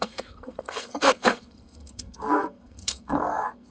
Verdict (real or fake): fake